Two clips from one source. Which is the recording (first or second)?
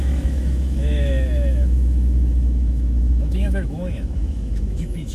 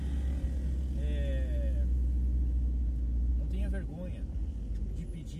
second